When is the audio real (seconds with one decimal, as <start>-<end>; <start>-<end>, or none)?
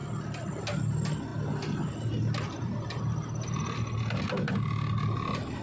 0.0-5.6